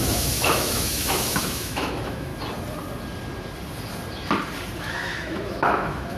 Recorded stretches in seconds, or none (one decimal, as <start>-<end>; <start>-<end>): 2.3-4.8